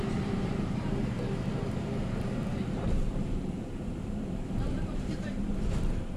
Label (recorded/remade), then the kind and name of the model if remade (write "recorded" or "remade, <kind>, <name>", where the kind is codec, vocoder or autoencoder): remade, vocoder, BigVGAN v2